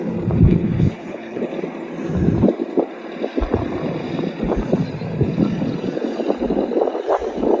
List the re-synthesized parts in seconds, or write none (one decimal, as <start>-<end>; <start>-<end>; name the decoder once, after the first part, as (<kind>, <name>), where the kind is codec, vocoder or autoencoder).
0.5-1.5 (codec, HILCodec)